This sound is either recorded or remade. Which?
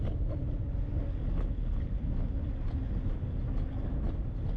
recorded